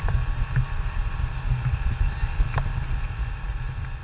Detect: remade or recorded recorded